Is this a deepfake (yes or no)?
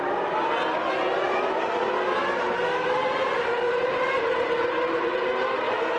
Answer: no